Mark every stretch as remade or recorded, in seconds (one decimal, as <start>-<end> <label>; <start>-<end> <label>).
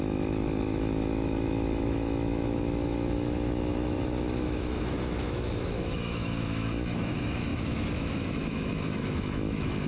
0.0-9.9 remade